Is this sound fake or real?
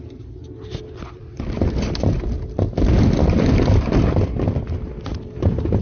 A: real